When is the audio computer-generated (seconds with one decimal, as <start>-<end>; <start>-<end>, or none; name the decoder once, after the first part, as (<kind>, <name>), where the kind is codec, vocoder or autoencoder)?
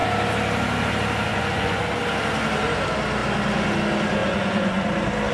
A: 1.3-1.8 (vocoder, Vocos); 4.2-4.8